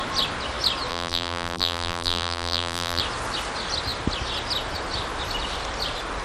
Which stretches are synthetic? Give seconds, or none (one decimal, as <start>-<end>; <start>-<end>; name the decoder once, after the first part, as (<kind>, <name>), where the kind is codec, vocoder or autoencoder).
0.9-3.0 (vocoder, BigVGAN v2)

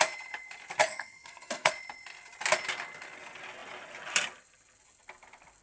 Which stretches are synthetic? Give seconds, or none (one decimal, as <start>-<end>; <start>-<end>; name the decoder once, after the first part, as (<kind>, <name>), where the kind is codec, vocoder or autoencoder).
0.8-1.7 (codec, SNAC)

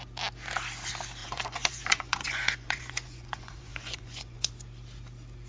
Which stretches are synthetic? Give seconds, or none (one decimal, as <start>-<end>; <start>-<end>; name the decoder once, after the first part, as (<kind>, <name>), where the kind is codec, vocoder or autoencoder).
1.2-4.5 (vocoder, Vocos)

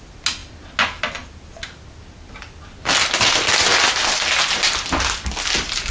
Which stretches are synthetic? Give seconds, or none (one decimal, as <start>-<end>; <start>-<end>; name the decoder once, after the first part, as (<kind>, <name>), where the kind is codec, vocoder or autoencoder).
none

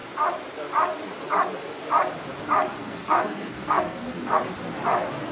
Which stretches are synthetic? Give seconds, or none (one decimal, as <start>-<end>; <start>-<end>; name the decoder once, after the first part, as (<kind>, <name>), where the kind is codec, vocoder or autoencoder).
2.8-4.4 (codec, SNAC)

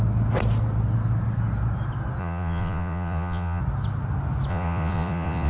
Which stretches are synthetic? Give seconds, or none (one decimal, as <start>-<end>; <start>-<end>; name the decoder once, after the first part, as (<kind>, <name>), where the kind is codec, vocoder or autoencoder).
2.2-3.6 (vocoder, Vocos); 4.5-5.5

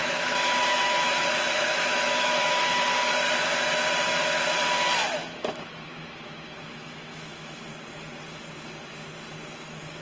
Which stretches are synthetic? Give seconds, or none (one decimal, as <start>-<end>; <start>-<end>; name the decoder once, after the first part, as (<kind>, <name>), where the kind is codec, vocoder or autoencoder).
0.0-2.8 (autoencoder, DAC-VAE); 5.0-7.6